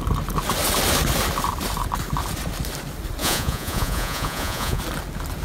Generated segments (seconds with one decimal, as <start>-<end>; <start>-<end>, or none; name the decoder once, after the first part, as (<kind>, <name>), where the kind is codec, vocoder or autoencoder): 3.2-4.8 (vocoder, Vocos)